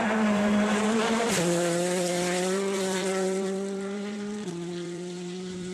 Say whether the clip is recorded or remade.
remade